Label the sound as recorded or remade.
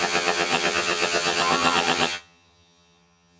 remade